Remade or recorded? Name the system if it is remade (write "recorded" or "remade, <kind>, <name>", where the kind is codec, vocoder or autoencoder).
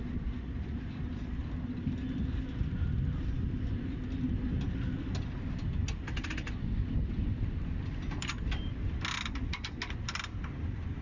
recorded